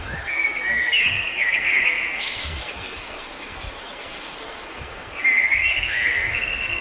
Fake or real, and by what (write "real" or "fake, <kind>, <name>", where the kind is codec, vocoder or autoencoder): fake, codec, SNAC